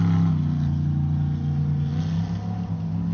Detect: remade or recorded recorded